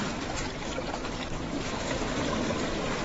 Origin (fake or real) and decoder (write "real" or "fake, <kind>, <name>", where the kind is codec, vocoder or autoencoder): real